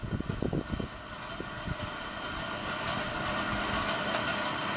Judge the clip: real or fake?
real